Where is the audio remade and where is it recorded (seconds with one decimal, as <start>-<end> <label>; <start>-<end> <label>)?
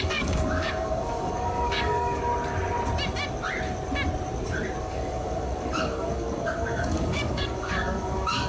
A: 0.0-2.3 remade; 2.3-4.8 recorded; 4.8-8.5 remade